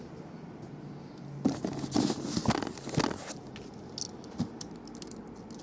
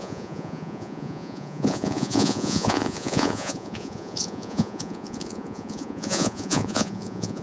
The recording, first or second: first